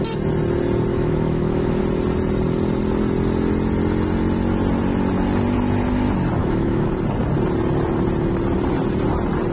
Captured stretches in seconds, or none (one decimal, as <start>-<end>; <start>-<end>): 0.0-0.9; 1.8-6.4; 6.9-9.5